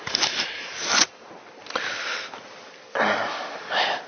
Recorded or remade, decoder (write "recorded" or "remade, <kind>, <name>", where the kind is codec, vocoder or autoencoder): recorded